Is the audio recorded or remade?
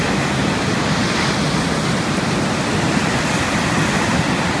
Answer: recorded